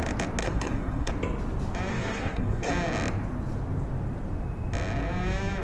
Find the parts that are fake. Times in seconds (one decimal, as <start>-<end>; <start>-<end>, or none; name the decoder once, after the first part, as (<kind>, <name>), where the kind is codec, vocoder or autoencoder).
0.4-1.1 (codec, SNAC); 1.9-2.7